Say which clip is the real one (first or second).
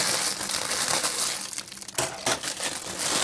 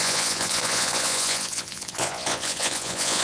first